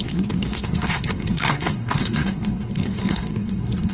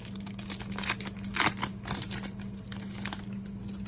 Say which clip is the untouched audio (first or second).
second